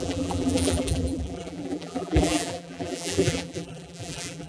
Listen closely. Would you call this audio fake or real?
fake